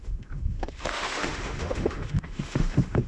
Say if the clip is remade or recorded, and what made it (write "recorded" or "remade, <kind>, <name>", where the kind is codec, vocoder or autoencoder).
remade, autoencoder, DAC-VAE